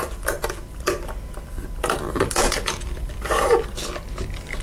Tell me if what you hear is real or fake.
fake